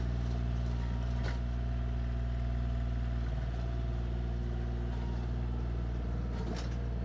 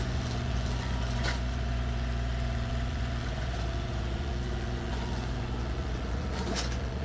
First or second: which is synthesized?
second